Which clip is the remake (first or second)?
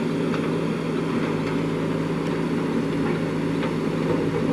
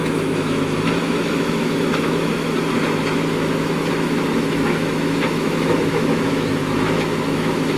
second